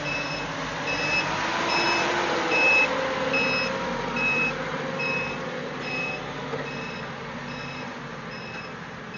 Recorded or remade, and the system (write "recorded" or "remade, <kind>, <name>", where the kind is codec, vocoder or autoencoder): recorded